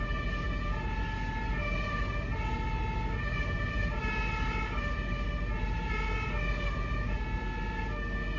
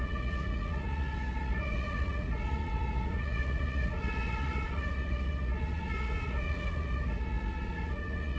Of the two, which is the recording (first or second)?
first